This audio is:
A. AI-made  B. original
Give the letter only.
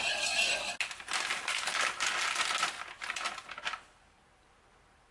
B